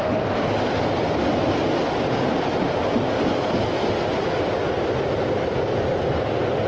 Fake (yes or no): no